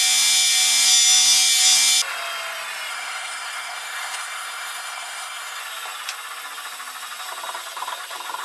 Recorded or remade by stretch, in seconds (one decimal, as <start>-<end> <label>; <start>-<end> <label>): 0.0-2.9 recorded; 2.9-5.6 remade; 5.6-8.4 recorded